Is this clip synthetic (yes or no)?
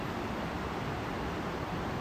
no